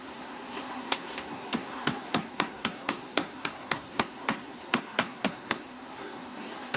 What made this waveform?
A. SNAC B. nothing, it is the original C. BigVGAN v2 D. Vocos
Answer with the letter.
A